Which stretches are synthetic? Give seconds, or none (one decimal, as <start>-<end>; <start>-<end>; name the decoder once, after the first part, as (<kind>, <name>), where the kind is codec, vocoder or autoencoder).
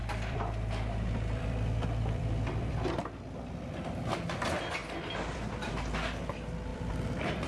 0.0-2.7 (vocoder, BigVGAN v2); 4.8-5.7; 6.7-7.5